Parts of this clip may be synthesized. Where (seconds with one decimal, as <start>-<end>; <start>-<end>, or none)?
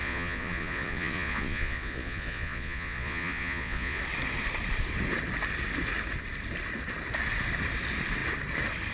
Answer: 0.0-4.0